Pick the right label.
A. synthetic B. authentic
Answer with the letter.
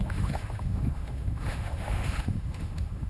A